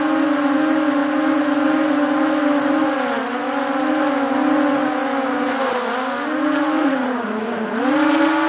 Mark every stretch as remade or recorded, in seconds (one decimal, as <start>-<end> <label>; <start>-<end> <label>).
0.0-6.8 recorded; 6.8-7.8 remade; 7.8-8.5 recorded